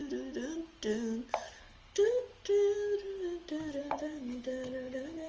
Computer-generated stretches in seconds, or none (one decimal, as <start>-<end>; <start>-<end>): 1.6-2.2; 3.8-5.3